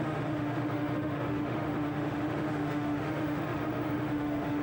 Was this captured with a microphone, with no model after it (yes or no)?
no